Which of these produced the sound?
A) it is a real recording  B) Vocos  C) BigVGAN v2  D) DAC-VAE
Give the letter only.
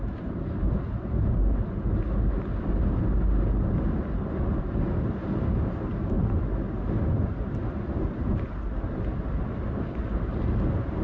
A